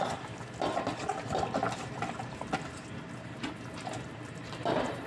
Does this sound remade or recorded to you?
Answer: recorded